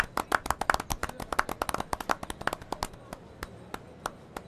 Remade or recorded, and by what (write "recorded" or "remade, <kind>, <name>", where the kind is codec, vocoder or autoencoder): recorded